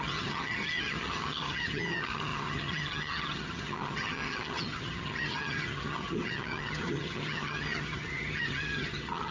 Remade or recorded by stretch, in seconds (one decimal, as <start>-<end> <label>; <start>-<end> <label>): 0.0-9.3 remade